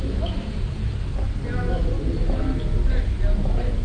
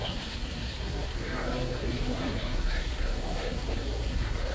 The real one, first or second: first